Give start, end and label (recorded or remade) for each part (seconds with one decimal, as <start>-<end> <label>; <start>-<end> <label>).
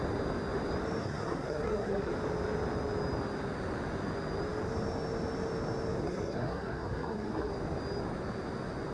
0.0-1.0 recorded; 1.0-2.1 remade; 2.1-6.0 recorded; 6.0-7.5 remade; 7.5-8.9 recorded